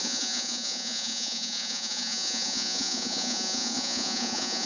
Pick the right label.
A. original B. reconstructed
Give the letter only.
B